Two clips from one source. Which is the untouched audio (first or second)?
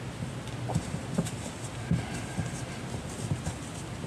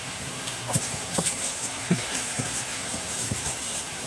first